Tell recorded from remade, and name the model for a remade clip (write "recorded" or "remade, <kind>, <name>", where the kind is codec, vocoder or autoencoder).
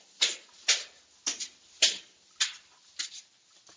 recorded